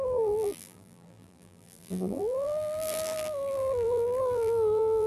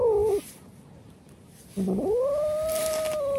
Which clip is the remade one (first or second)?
first